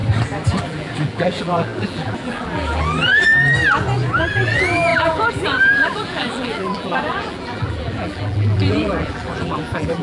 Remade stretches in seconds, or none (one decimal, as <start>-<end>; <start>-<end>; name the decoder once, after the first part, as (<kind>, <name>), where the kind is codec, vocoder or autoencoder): 0.6-3.3 (vocoder, BigVGAN v2); 4.2-10.0